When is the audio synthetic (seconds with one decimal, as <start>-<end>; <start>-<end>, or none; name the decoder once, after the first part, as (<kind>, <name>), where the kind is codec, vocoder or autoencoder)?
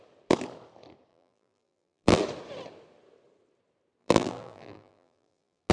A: 1.1-2.2 (vocoder, BigVGAN v2); 4.0-5.7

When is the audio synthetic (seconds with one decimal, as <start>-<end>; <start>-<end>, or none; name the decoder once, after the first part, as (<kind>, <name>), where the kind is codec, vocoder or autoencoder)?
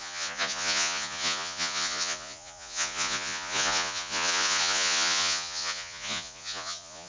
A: 0.0-7.1 (vocoder, Vocos)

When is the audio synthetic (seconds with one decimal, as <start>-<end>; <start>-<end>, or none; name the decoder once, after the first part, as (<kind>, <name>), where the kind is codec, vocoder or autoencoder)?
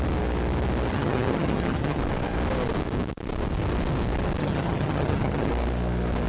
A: 0.9-2.0 (vocoder, HiFi-GAN); 4.4-5.5